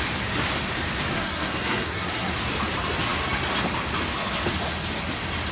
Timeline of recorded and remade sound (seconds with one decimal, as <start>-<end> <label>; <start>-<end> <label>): 0.0-1.1 recorded; 1.1-2.3 remade; 2.3-5.5 recorded